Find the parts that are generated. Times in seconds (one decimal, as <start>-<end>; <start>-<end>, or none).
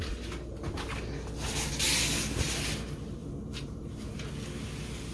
3.2-4.3